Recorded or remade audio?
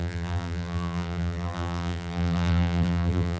remade